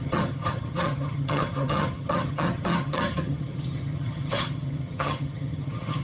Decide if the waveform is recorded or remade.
remade